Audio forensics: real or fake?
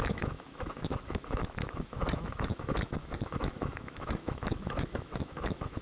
fake